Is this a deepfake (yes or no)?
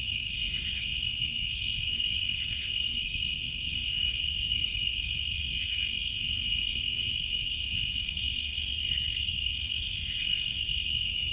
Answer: yes